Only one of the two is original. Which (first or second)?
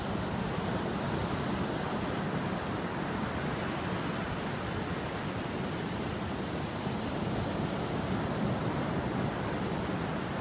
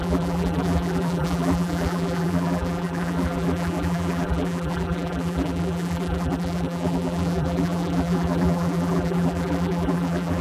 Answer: first